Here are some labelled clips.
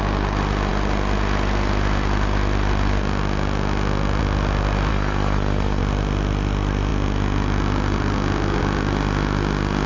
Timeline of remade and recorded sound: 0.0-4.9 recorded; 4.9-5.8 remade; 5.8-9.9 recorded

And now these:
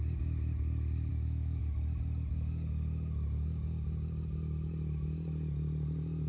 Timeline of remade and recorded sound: 0.0-1.1 recorded; 1.1-1.6 remade; 1.6-6.3 recorded

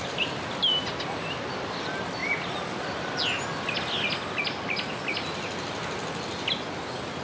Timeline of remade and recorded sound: 0.0-7.2 recorded

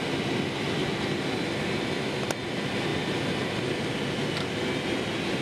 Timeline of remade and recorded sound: 0.0-5.4 recorded

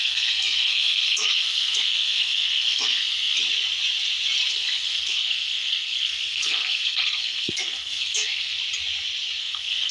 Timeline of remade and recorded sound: 0.0-3.4 remade; 3.4-4.5 recorded; 4.5-8.6 remade; 8.6-9.4 recorded; 9.4-9.9 remade